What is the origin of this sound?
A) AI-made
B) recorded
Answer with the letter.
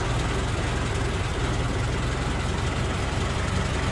B